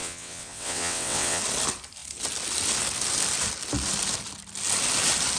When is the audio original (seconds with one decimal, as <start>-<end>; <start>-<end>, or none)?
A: 1.4-5.4